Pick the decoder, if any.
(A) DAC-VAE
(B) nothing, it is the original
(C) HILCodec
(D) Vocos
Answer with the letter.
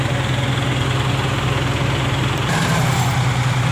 B